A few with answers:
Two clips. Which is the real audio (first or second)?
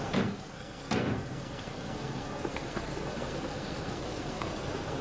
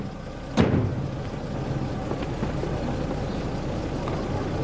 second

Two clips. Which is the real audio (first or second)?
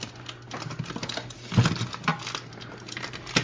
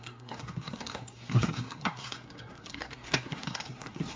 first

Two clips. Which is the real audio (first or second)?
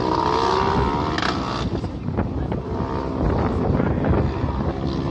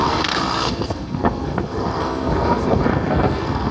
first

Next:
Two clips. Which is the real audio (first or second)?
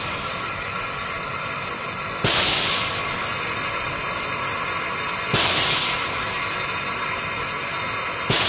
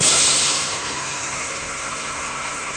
first